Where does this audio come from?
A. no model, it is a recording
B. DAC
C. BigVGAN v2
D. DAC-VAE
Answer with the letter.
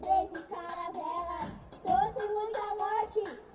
A